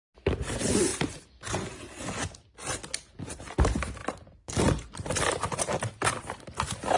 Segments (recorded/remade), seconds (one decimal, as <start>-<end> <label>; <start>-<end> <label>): 0.0-4.0 recorded; 4.0-5.7 remade; 5.7-7.0 recorded